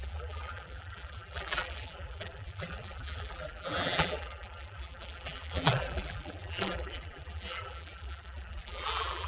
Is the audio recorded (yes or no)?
no